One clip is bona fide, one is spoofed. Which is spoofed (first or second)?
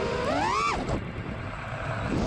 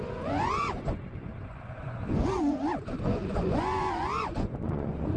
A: second